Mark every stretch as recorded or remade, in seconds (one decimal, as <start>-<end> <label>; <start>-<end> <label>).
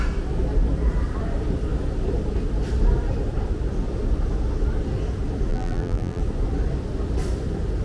0.0-5.5 recorded; 5.5-6.2 remade; 6.2-7.8 recorded